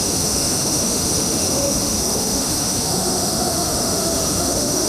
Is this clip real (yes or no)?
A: no